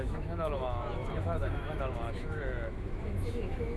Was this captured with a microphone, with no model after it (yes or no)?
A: no